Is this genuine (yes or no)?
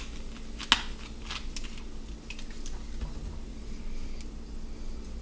yes